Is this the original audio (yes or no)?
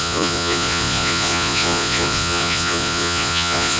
no